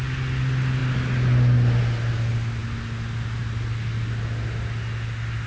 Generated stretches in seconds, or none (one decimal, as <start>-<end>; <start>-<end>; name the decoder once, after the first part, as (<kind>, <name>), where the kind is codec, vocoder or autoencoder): none